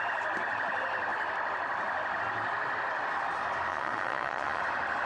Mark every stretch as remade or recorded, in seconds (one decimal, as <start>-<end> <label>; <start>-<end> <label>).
0.0-3.7 recorded; 3.7-4.6 remade; 4.6-5.1 recorded